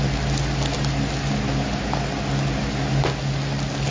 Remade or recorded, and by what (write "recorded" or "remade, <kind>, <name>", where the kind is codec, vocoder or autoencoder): recorded